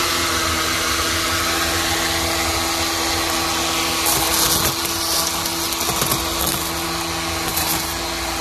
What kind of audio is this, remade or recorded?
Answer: recorded